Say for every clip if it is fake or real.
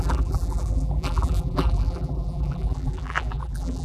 fake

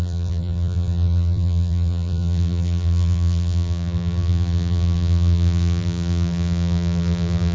fake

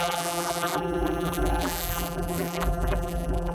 fake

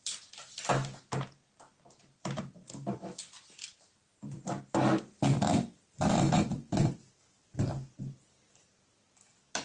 fake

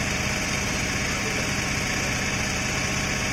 real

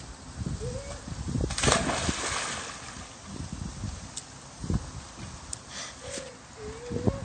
real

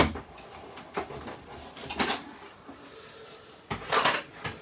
real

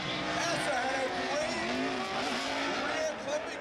real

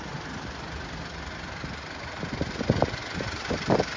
fake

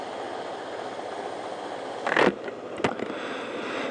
real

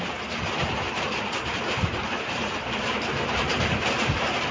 fake